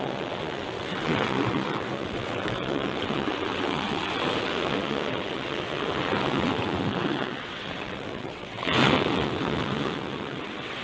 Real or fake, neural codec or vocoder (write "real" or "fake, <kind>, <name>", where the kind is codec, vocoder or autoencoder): fake, vocoder, WaveNeXt